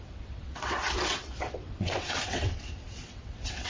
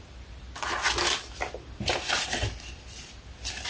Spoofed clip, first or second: first